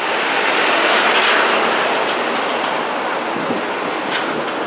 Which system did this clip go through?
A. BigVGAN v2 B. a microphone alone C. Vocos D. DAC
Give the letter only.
B